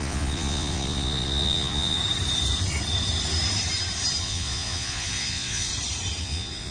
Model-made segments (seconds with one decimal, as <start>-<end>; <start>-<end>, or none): 0.0-2.0; 4.2-5.7; 6.2-6.7